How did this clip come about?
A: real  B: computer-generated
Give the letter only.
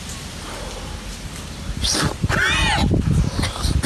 A